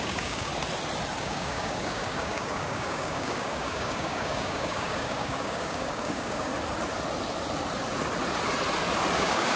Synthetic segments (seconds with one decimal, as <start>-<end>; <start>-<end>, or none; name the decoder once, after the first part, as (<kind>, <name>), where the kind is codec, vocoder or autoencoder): 0.0-0.5 (codec, DAC); 1.2-6.5; 9.2-9.6

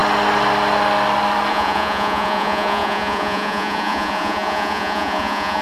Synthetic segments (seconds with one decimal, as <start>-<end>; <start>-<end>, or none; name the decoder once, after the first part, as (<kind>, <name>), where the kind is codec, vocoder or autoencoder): 1.5-5.6 (vocoder, Vocos)